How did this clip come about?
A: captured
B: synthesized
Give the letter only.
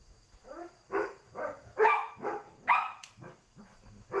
B